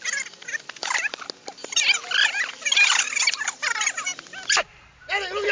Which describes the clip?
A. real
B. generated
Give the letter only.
A